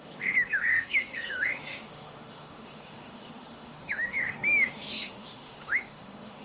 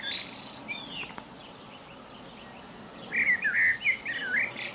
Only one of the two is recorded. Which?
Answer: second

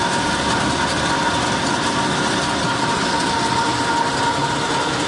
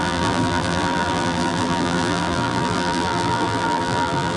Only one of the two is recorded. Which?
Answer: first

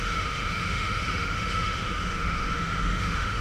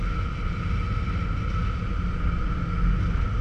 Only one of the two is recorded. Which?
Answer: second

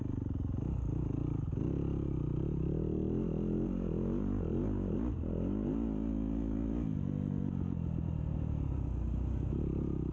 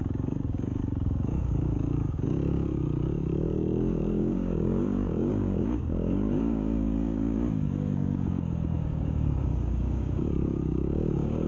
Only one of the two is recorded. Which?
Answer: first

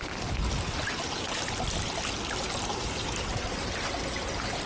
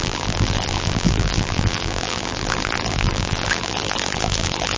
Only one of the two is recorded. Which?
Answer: first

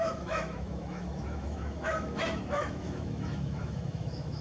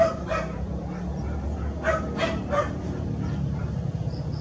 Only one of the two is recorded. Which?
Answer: second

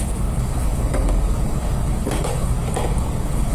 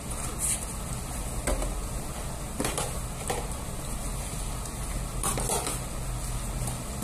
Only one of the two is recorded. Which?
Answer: second